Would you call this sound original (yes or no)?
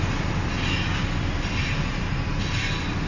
no